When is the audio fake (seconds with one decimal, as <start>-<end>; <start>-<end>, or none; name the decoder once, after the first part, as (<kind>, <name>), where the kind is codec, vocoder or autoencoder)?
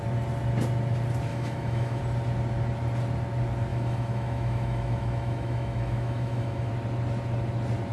1.3-2.0 (autoencoder, DAC-VAE); 3.7-6.7